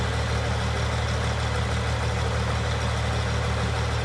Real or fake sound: real